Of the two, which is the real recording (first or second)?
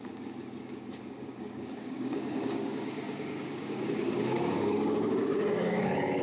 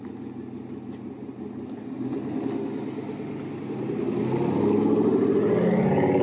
second